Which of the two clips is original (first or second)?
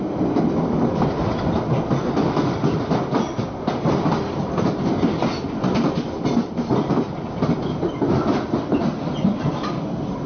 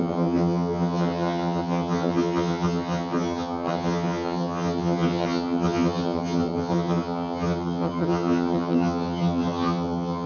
first